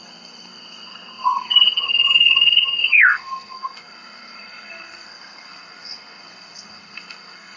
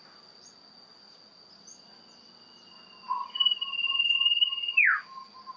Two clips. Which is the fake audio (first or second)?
first